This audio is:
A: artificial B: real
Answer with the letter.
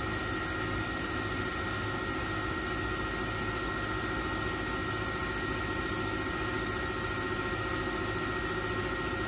B